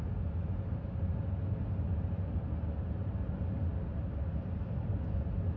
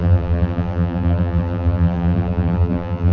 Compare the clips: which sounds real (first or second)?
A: first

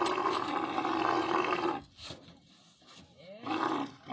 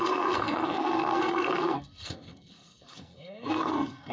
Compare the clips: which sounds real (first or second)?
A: first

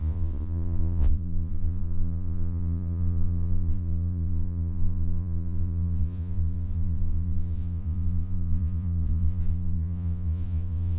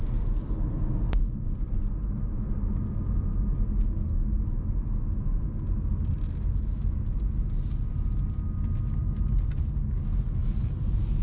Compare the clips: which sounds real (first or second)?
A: second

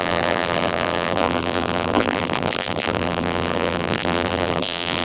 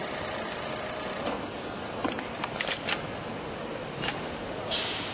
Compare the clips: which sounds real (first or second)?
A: second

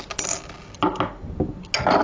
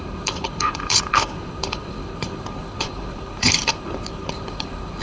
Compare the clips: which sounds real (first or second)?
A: first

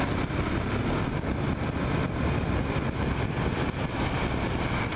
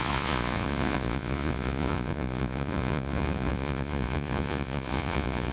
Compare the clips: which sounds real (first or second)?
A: first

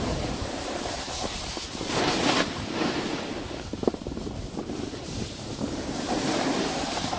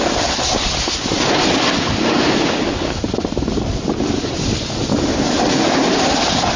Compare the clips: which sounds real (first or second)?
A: second